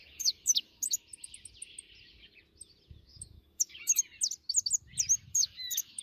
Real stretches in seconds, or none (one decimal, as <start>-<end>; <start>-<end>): 1.0-3.1; 4.0-5.3